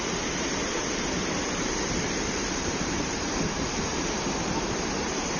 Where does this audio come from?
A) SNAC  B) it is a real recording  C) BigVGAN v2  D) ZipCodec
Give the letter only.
C